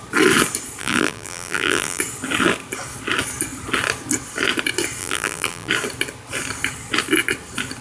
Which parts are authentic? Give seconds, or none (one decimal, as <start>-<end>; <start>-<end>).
0.0-0.8; 2.0-5.0; 5.7-7.8